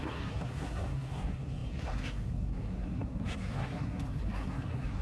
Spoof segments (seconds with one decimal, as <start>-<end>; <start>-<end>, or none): 0.0-5.0